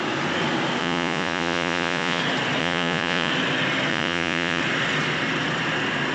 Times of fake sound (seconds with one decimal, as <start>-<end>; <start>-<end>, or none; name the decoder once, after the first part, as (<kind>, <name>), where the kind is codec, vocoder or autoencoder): 0.8-2.2 (vocoder, Vocos); 2.6-3.3; 3.9-4.6

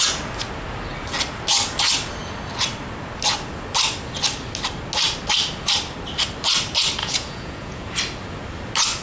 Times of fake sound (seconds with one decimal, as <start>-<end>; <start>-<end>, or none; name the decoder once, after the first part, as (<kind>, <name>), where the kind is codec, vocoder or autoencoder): 7.0-7.9 (vocoder, Vocos)